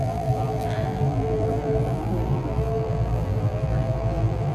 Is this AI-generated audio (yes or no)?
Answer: yes